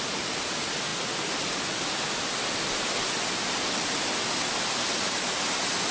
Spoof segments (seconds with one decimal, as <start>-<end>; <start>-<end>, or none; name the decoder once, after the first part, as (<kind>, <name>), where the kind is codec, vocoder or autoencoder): none